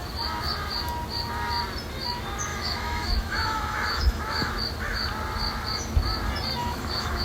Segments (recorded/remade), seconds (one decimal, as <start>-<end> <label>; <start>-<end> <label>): 0.0-2.5 recorded; 2.5-4.5 remade; 4.5-6.6 recorded; 6.6-7.2 remade